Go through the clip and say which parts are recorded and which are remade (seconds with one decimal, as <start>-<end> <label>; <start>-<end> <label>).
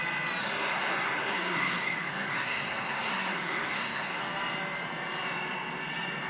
0.0-0.4 recorded; 0.4-4.2 remade; 4.2-6.3 recorded